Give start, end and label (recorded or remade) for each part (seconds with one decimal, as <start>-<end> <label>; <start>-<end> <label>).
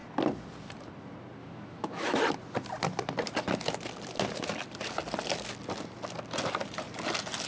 0.0-1.4 recorded; 1.4-2.2 remade; 2.2-7.5 recorded